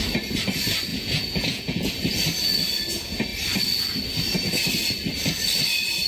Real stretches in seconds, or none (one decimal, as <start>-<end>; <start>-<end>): 0.0-0.9; 1.9-6.1